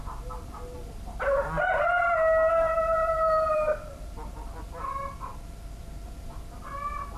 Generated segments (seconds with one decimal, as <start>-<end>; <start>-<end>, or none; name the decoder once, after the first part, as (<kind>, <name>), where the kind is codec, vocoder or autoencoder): 0.0-1.8 (vocoder, BigVGAN v2); 3.0-5.8